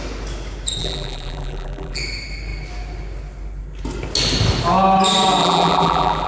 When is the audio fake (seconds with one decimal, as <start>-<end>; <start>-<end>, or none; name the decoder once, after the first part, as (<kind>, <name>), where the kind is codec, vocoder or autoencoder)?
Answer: 0.8-2.0 (vocoder, BigVGAN v2); 5.4-6.3